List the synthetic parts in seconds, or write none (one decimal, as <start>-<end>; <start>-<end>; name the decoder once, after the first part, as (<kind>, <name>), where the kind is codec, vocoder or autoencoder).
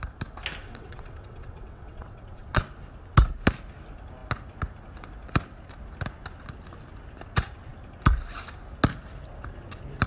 0.6-2.6 (vocoder, WaveNeXt)